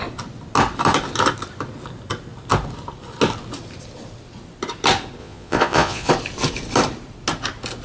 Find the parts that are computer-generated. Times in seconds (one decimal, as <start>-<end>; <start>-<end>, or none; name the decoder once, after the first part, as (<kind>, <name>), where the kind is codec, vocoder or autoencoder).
5.2-6.1 (vocoder, Vocos)